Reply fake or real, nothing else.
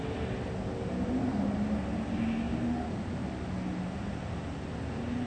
real